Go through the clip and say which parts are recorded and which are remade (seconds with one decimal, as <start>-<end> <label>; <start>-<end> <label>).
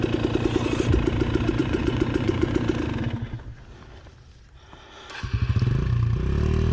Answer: 0.0-1.6 recorded; 1.6-2.5 remade; 2.5-6.7 recorded